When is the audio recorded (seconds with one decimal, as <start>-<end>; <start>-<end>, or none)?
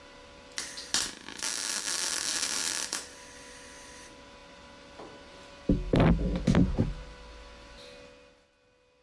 0.0-9.0